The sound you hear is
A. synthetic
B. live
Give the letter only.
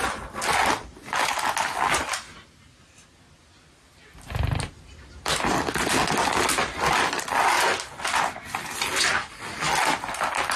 B